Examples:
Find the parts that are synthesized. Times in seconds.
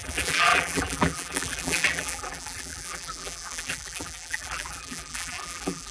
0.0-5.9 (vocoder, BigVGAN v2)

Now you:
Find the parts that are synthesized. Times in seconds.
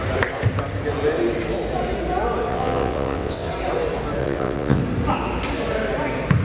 2.5-3.5 (vocoder, WaveNeXt); 4.2-4.8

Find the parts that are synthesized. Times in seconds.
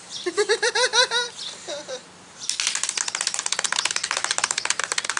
0.0-0.9 (vocoder, BigVGAN v2); 3.9-5.2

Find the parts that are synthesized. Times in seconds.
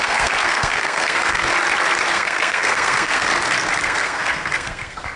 0.0-1.5 (codec, SNAC); 2.1-3.3; 3.8-5.2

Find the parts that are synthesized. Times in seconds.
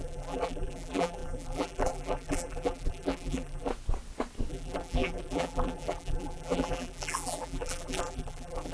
0.0-3.7 (vocoder, BigVGAN v2); 4.5-8.7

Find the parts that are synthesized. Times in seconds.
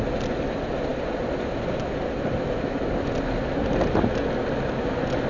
none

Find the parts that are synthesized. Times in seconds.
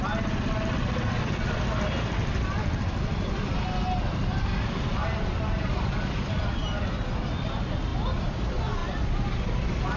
none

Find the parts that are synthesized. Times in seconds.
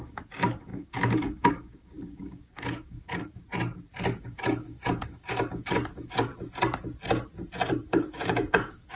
0.0-3.4 (codec, DAC); 3.9-6.3; 7.7-8.9